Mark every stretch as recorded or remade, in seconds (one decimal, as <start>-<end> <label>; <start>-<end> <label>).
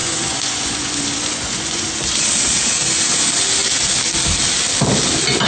0.0-1.9 remade; 1.9-5.5 recorded